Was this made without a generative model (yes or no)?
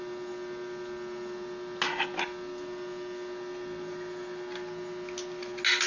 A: yes